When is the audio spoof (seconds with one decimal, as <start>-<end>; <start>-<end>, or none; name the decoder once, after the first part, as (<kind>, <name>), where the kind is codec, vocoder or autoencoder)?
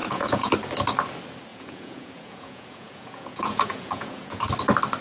0.0-0.5 (vocoder, Vocos); 1.5-4.5